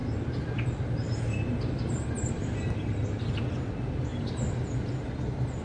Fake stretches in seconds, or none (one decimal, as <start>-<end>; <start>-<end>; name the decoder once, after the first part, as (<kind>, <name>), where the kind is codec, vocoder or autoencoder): none